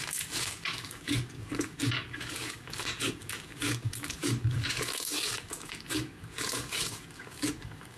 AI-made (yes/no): yes